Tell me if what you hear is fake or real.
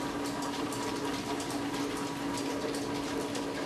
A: real